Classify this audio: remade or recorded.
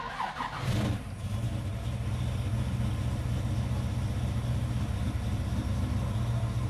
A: recorded